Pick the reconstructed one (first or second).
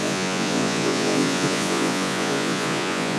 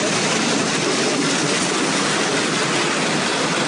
first